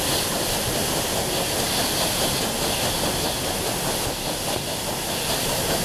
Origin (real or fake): real